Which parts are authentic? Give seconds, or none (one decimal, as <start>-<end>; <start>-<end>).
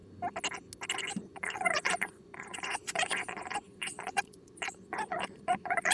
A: 0.0-1.3